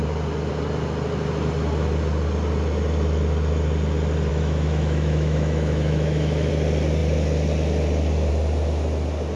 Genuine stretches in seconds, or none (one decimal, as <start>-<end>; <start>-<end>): 0.0-4.3; 6.5-9.4

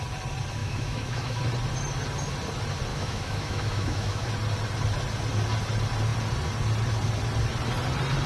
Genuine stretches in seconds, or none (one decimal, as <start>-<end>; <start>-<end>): 0.0-0.6; 1.4-2.9; 4.3-8.3

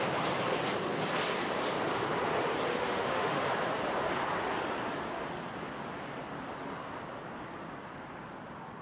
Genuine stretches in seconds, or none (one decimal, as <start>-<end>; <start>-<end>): 0.0-2.7; 3.4-8.8

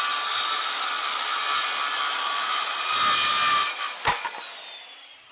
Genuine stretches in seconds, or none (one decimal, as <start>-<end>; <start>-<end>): 0.0-5.3

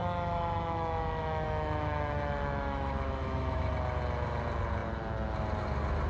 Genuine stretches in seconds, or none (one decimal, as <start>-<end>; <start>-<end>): 3.7-6.1